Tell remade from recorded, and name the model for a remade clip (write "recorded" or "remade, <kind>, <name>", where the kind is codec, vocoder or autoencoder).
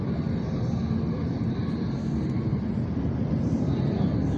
recorded